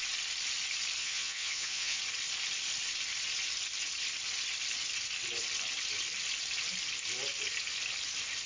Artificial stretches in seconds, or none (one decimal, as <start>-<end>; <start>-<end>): 1.0-2.0